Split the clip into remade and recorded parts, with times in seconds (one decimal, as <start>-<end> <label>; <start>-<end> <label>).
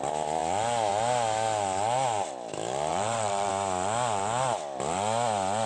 0.0-2.9 recorded; 2.9-3.5 remade; 3.5-5.7 recorded